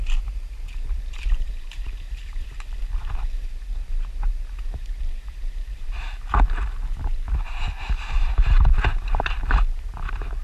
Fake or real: fake